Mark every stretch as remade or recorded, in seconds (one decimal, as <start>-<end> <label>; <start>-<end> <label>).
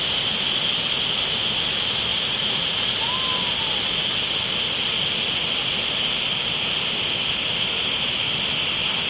0.0-2.1 recorded; 2.1-3.0 remade; 3.0-9.1 recorded